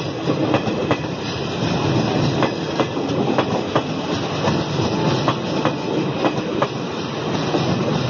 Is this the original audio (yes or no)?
yes